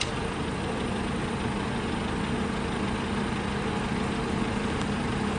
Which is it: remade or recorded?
recorded